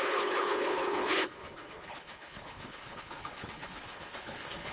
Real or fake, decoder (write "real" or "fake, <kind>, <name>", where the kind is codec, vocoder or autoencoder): fake, codec, HILCodec